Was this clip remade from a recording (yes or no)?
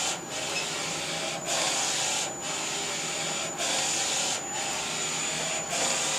no